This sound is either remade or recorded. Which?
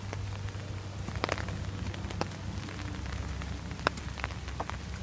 recorded